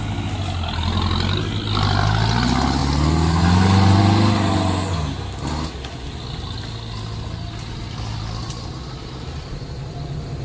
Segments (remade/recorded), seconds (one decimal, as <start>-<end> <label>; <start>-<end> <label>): 0.0-8.4 recorded; 8.4-10.0 remade; 10.0-10.4 recorded